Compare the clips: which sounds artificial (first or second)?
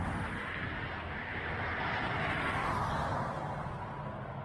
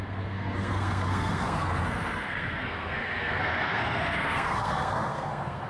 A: second